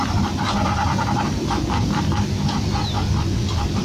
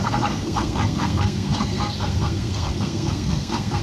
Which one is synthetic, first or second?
second